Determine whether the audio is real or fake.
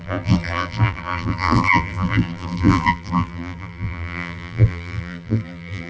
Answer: fake